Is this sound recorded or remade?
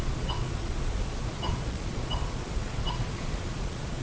remade